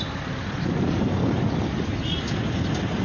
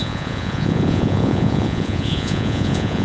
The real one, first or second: first